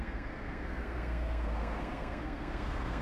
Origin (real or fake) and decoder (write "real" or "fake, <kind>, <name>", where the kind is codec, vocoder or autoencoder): fake, codec, SNAC